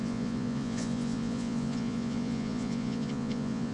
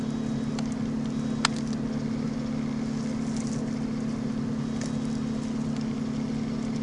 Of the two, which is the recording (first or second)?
second